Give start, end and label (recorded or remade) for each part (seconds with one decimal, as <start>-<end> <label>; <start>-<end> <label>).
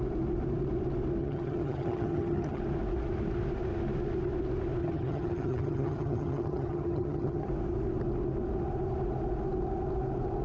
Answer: 0.0-1.2 recorded; 1.2-2.6 remade; 2.6-4.8 recorded; 4.8-7.5 remade; 7.5-10.4 recorded